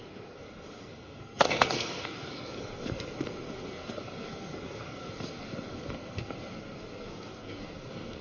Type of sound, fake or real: fake